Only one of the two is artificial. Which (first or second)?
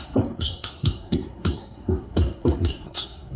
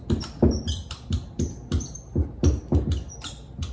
first